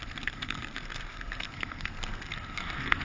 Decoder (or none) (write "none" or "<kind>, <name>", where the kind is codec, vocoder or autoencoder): codec, SNAC